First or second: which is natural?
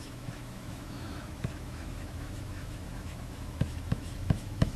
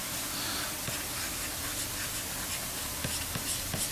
second